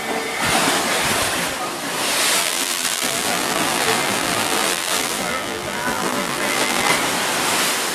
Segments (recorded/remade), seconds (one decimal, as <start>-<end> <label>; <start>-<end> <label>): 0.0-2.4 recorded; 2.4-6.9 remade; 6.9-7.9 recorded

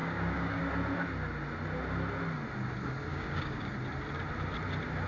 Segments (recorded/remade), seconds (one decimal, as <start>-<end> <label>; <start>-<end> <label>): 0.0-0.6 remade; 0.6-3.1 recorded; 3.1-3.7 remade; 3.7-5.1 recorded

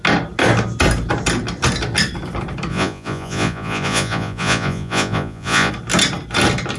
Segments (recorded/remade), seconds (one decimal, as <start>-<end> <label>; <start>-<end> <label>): 0.0-2.7 recorded; 2.7-5.7 remade; 5.7-6.8 recorded

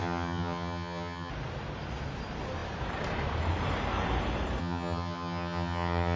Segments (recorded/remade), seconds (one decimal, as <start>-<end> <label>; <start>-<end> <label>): 0.0-1.3 remade; 1.3-4.6 recorded; 4.6-6.2 remade